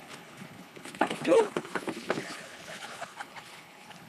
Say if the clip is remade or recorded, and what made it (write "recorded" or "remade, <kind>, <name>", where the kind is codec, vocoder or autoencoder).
remade, codec, HILCodec